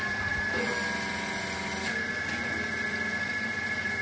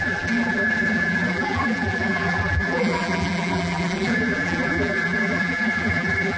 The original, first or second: first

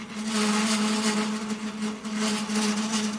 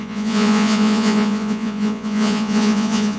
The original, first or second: first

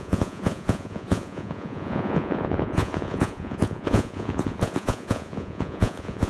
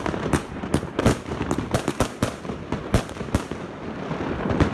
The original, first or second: second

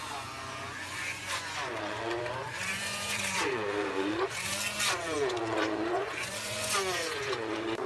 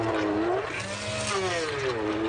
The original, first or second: second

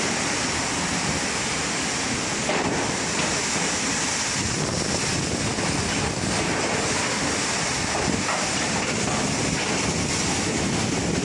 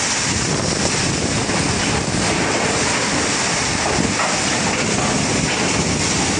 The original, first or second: second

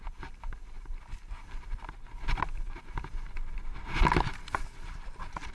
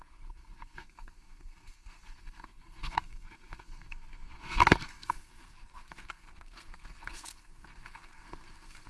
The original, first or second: first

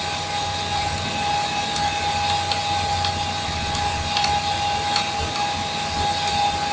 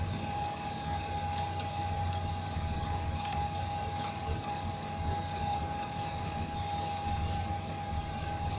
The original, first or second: first